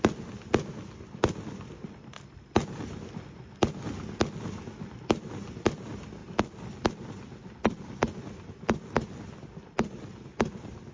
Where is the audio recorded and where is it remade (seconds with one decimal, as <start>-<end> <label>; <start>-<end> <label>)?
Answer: 0.0-10.9 recorded